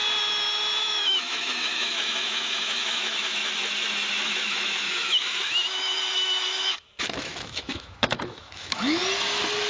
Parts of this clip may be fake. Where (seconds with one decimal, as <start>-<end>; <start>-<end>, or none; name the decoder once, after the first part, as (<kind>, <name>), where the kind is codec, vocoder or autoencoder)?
0.8-3.4 (autoencoder, DAC-VAE); 4.1-9.0